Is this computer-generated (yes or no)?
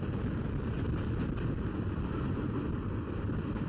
yes